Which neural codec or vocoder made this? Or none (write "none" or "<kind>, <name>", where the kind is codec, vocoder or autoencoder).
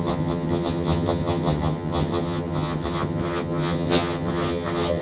vocoder, HiFi-GAN